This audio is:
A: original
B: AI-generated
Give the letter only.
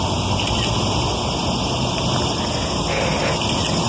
A